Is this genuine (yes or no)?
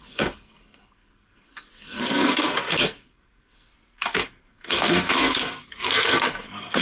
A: no